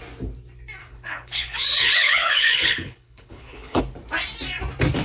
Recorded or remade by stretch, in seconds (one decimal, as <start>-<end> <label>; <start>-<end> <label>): 0.0-0.8 recorded; 0.8-3.8 remade; 3.8-5.0 recorded